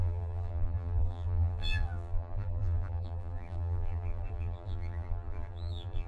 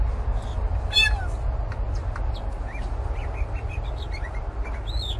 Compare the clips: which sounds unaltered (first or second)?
second